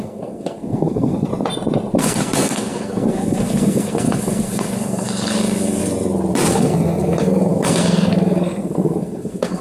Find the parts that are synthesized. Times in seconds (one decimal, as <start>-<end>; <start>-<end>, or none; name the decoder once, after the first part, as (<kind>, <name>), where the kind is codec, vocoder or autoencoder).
0.0-1.3 (codec, SNAC); 2.0-5.8; 6.5-9.6